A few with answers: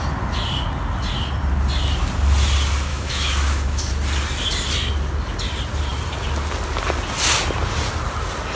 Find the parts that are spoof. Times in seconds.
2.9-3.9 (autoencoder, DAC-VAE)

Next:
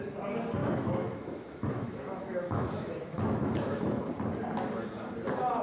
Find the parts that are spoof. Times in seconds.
0.6-4.0 (autoencoder, DAC-VAE)